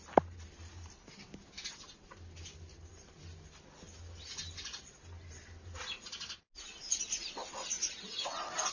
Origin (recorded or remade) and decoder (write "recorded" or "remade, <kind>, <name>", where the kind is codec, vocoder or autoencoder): recorded